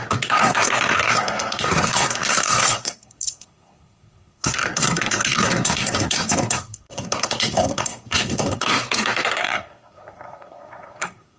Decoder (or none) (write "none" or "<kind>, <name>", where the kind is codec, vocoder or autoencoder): codec, SNAC